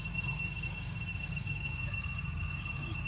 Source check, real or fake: fake